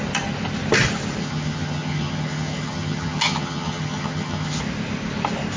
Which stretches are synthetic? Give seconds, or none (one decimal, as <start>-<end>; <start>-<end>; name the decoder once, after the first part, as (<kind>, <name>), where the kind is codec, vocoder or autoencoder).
1.2-4.6 (vocoder, HiFi-GAN)